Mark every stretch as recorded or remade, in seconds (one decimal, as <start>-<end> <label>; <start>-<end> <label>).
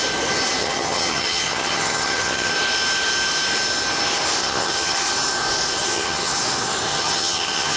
0.0-0.6 recorded; 0.6-2.5 remade; 2.5-4.4 recorded; 4.4-5.1 remade; 5.1-5.8 recorded; 5.8-6.4 remade; 6.4-6.9 recorded; 6.9-7.8 remade